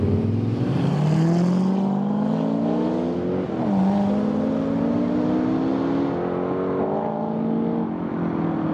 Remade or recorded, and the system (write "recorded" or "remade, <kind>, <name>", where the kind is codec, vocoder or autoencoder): recorded